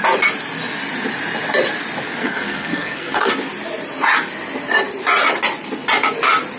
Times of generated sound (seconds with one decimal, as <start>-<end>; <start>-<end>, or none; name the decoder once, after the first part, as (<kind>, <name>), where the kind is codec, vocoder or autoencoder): 2.2-3.3 (codec, SNAC)